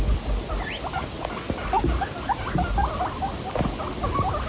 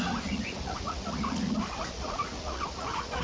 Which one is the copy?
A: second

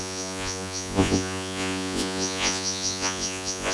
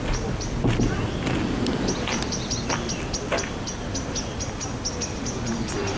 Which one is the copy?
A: first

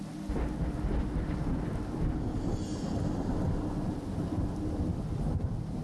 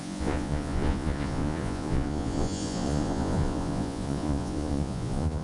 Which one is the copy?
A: second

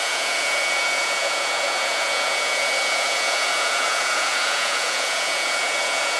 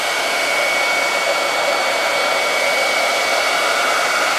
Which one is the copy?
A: first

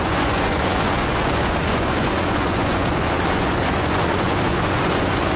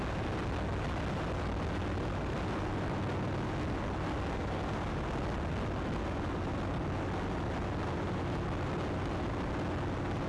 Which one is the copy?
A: first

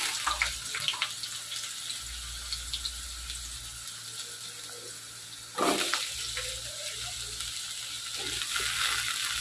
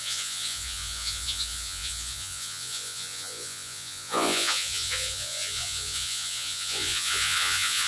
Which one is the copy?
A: second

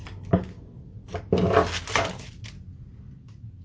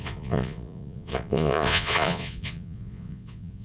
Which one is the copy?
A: second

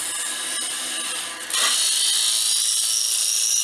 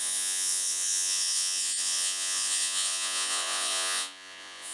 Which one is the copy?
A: second